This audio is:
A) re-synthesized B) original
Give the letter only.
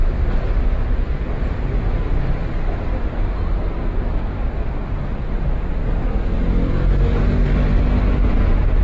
B